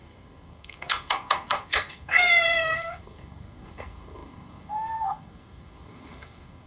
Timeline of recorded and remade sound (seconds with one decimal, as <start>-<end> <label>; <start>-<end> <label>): 0.0-6.7 remade